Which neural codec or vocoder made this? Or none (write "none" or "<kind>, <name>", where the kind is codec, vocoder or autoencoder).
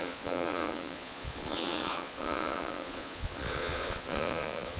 vocoder, Vocos